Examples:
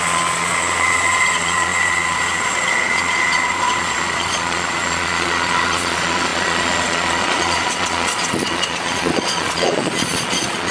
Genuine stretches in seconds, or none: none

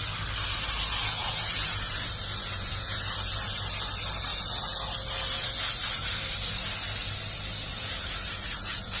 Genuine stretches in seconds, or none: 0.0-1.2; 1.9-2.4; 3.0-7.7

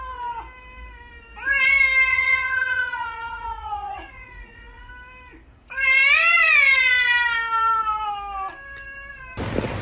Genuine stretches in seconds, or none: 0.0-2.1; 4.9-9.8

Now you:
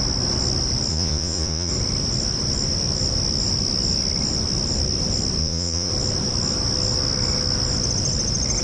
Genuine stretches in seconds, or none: 0.0-0.9; 1.7-5.4; 5.9-8.6

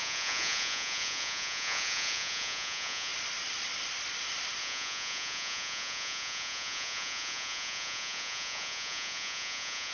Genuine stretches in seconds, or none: 3.1-4.6

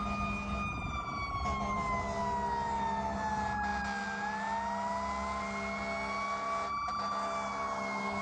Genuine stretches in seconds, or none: 0.0-8.2

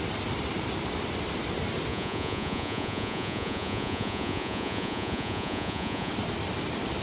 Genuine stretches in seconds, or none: 0.0-1.9; 6.1-7.0

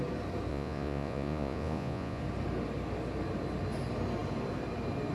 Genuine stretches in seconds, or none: 0.0-0.5; 2.2-5.1